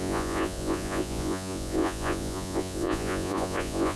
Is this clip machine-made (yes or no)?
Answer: yes